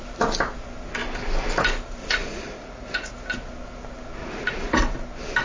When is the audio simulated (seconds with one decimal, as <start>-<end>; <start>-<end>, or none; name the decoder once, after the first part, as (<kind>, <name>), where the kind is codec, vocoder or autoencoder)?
2.0-3.1 (vocoder, Vocos); 4.2-4.8

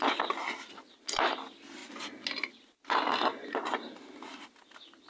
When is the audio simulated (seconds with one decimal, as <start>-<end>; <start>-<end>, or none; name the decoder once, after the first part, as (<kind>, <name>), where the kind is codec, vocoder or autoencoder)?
none

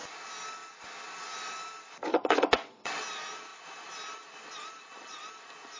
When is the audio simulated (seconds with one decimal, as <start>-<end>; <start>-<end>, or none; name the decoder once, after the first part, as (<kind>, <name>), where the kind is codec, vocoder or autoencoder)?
2.1-2.9 (vocoder, Vocos); 4.8-5.3

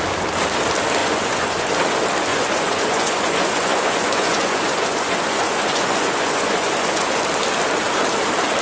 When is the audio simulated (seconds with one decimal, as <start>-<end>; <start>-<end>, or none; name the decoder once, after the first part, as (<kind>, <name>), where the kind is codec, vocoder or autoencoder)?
1.0-1.7 (vocoder, Vocos); 2.3-7.2

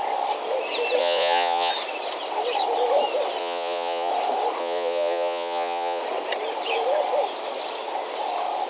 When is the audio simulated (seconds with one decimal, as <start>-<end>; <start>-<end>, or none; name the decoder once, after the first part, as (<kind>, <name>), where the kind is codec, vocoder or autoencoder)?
1.0-1.7 (vocoder, Vocos); 3.4-4.1; 4.6-6.0

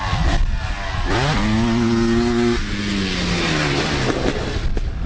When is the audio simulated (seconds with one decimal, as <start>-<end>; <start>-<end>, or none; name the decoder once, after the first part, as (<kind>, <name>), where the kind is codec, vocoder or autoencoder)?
none

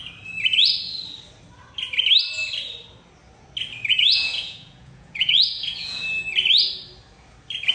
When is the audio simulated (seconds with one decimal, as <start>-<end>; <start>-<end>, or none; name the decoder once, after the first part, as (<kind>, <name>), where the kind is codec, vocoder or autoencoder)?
3.9-6.0 (vocoder, Vocos)

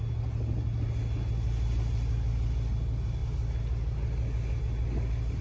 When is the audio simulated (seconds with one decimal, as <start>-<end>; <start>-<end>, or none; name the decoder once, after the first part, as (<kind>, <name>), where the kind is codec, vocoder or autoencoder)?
none